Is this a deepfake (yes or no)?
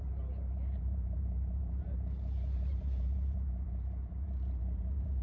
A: yes